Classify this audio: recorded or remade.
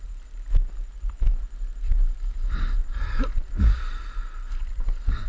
recorded